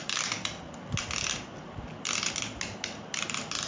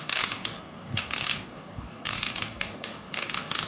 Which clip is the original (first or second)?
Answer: first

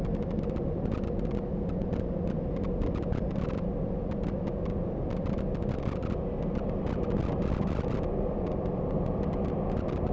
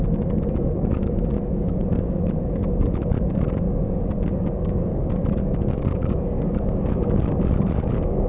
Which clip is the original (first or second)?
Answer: first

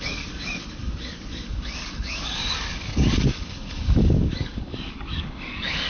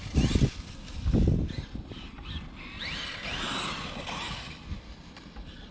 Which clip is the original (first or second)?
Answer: second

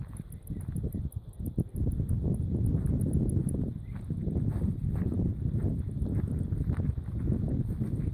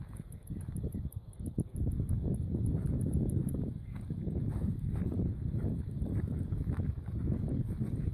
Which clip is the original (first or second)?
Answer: first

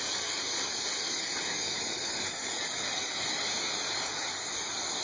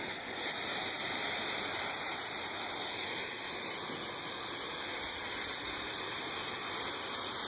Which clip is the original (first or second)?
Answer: second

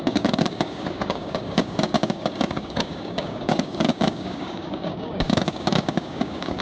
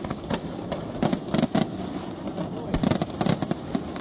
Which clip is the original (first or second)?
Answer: second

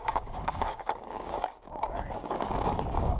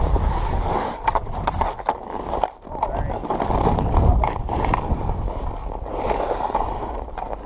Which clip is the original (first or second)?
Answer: second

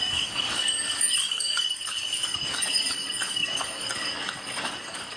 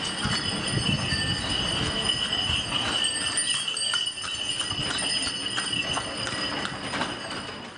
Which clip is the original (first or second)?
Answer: second